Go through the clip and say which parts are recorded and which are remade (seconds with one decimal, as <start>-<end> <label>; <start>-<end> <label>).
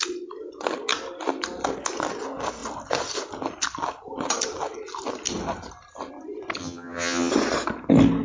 0.0-6.6 recorded; 6.6-7.3 remade; 7.3-8.2 recorded